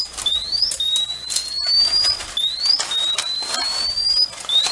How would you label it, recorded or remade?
recorded